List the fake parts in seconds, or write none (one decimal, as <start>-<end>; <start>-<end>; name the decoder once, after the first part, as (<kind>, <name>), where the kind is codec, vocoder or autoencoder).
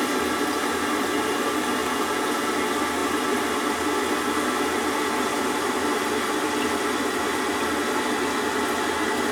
1.8-2.5 (vocoder, Vocos)